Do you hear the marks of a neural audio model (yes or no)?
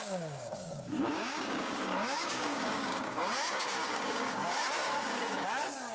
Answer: yes